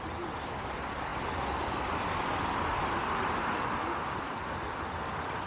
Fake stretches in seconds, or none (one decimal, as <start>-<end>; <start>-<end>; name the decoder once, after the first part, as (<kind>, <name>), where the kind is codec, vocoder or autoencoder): none